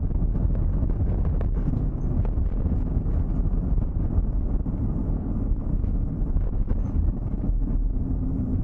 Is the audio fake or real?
real